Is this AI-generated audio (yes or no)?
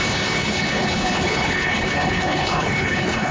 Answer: yes